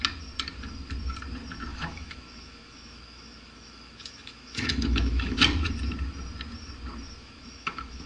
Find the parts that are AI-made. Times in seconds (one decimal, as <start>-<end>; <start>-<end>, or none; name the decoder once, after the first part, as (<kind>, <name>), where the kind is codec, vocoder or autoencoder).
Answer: 1.7-5.4 (autoencoder, DAC-VAE); 7.2-8.1